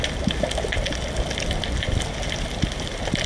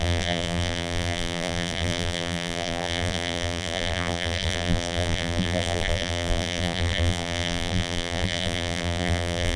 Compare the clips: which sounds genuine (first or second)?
first